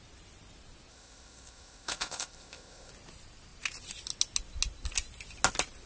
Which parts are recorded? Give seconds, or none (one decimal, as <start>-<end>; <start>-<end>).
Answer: 0.0-0.9; 2.9-5.9